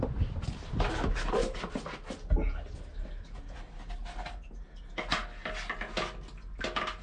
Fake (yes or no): no